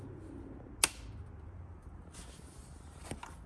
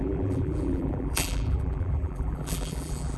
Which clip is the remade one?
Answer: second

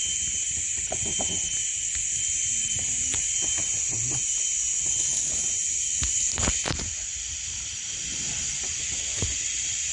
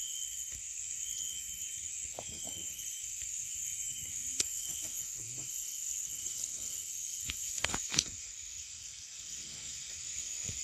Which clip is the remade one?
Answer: second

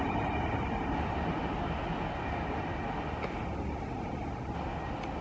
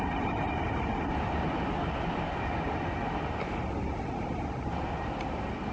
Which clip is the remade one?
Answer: second